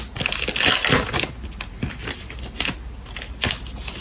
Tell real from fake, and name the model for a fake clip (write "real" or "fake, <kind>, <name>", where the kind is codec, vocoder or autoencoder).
real